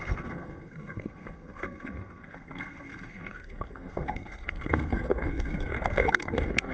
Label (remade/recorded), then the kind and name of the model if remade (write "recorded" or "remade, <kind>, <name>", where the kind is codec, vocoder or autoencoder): remade, codec, SNAC